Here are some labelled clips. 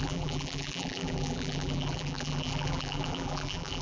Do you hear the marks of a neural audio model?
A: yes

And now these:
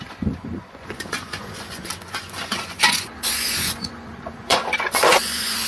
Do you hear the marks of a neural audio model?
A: yes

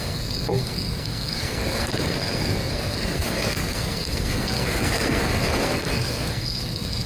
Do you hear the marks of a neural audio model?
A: yes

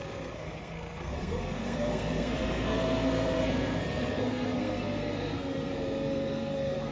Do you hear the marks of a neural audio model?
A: yes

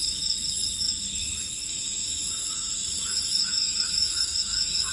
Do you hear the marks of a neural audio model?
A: yes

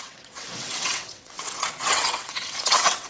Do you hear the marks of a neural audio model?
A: yes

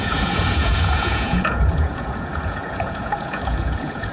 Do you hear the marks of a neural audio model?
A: yes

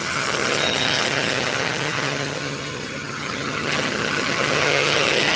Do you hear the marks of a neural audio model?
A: yes